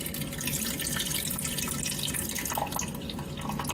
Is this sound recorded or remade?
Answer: recorded